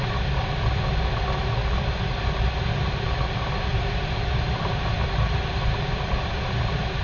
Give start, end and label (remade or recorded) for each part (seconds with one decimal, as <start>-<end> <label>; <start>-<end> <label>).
0.0-1.6 recorded; 1.6-3.0 remade; 3.0-3.7 recorded; 3.7-7.0 remade